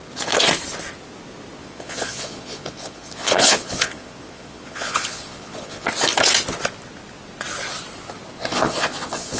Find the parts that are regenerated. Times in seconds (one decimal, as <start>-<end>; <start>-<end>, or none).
1.6-5.9; 8.4-9.4